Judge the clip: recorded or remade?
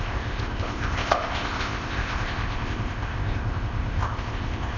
remade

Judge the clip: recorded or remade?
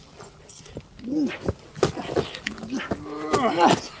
recorded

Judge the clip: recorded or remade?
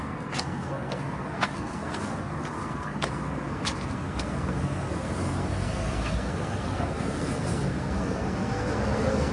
remade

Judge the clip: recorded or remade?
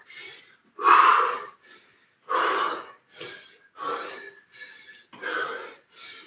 recorded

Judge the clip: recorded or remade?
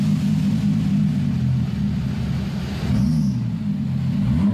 recorded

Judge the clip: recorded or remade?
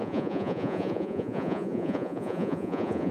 remade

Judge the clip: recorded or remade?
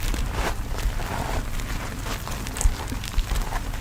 remade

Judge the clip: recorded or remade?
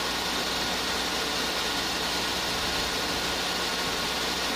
recorded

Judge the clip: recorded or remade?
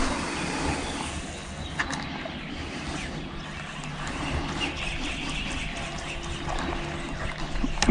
recorded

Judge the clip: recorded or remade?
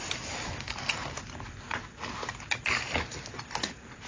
recorded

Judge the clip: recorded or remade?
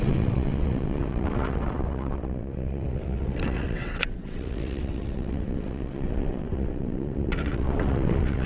remade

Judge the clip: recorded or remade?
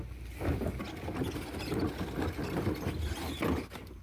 recorded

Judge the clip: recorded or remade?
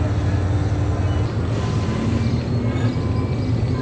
recorded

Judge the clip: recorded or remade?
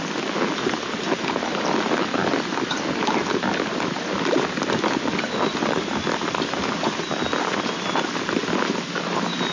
recorded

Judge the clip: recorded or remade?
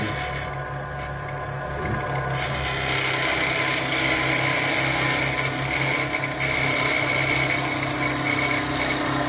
recorded